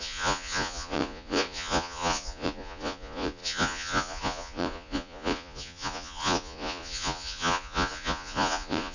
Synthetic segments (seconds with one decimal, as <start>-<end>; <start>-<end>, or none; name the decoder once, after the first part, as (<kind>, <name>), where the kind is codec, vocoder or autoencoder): 0.0-8.9 (vocoder, Vocos)